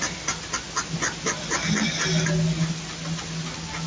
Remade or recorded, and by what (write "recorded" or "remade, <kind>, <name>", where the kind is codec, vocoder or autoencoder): recorded